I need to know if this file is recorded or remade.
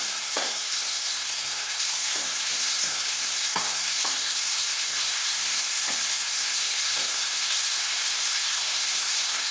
remade